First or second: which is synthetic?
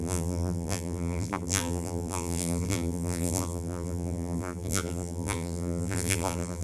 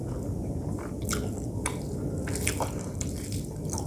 first